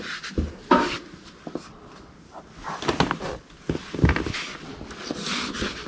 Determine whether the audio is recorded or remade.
recorded